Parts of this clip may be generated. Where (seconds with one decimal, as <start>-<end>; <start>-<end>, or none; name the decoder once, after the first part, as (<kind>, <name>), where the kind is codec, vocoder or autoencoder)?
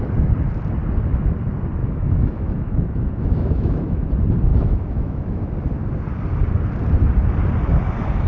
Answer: 1.8-4.1 (autoencoder, DAC-VAE); 4.5-5.5